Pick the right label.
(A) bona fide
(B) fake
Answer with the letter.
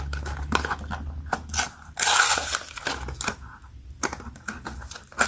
A